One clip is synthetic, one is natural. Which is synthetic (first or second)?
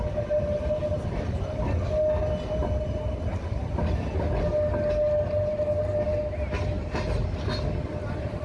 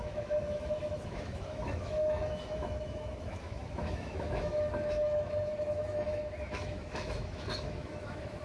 second